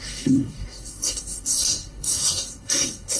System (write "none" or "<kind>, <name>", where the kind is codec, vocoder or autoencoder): codec, SNAC